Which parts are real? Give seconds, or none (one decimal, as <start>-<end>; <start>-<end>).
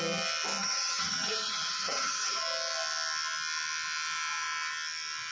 0.0-0.6; 2.4-5.3